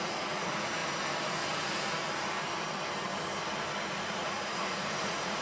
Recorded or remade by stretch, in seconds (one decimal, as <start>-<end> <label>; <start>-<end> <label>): 0.0-0.8 remade; 0.8-3.9 recorded; 3.9-5.4 remade